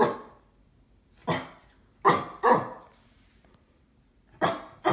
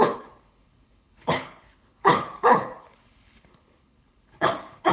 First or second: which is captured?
first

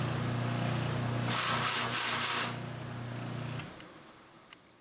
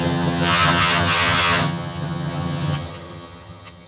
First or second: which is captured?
first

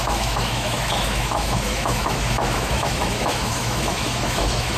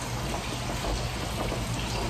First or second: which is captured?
second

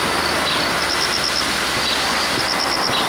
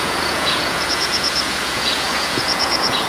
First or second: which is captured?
first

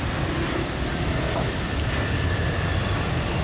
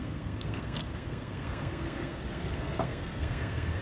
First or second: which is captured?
first